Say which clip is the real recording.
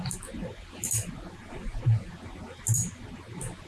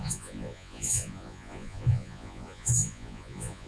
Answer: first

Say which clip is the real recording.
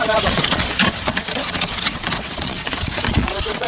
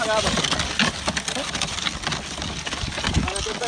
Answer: second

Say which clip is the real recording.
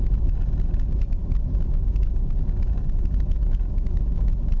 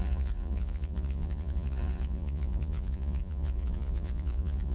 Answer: first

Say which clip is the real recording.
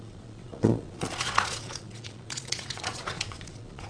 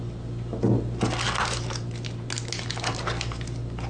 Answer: second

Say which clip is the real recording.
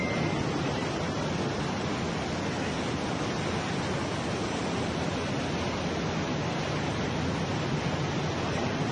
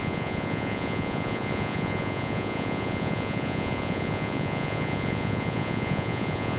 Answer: first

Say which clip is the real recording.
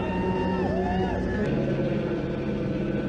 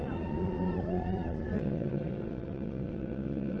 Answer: first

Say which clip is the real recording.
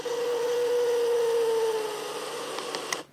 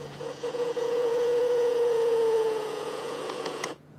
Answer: first